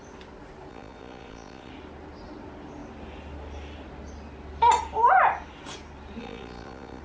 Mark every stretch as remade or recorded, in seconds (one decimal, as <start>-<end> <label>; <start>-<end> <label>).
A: 0.0-0.7 recorded; 0.7-1.7 remade; 1.7-6.2 recorded; 6.2-7.0 remade